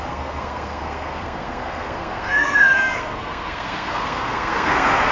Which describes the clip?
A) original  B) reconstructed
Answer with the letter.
B